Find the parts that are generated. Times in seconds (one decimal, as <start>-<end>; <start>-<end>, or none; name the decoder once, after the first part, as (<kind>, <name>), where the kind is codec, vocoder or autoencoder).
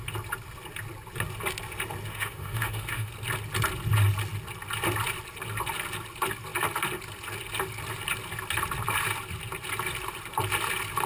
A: 2.1-3.1 (autoencoder, DAC-VAE)